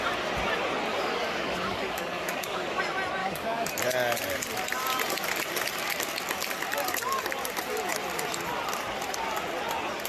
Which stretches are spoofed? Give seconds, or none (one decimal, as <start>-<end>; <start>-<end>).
0.9-2.8; 3.2-3.7